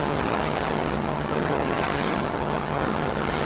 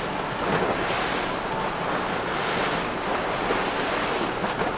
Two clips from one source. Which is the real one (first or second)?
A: second